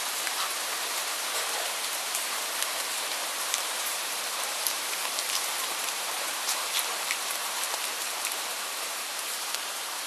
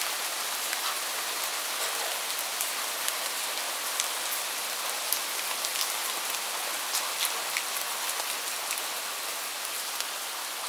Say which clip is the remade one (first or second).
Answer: first